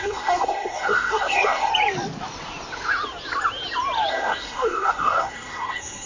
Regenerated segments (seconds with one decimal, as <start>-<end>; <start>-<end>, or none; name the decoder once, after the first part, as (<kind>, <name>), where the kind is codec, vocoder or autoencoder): 0.0-1.7 (codec, SNAC); 4.1-6.1